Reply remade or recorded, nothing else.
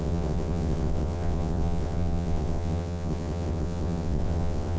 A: remade